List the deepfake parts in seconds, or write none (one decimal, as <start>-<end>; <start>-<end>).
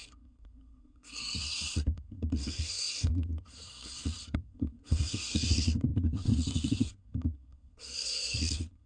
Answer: 0.0-8.9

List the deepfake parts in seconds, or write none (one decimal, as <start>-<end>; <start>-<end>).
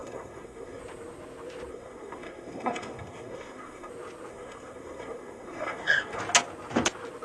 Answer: 0.0-0.8; 1.7-3.9; 4.3-6.2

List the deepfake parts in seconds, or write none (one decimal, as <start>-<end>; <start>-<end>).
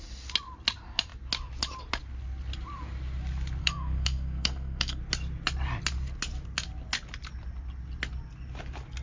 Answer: 3.6-5.0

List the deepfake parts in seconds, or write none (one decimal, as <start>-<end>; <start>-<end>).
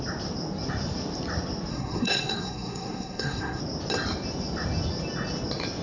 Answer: 1.7-3.6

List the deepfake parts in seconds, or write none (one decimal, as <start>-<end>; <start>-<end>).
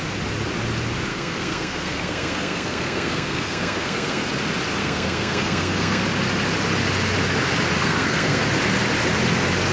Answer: 1.1-4.2; 4.8-6.0; 7.8-8.4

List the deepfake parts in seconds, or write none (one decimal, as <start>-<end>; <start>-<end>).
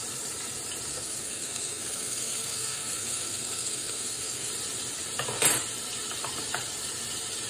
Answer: 0.9-4.5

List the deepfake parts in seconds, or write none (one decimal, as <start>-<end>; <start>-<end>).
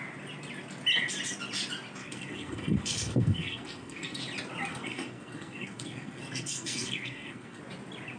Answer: 2.0-4.2; 4.7-7.6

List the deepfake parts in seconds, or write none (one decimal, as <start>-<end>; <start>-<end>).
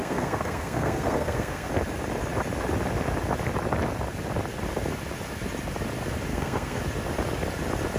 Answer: 0.0-1.7; 6.3-6.8